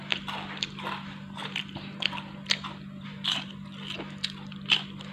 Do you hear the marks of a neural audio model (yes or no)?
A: yes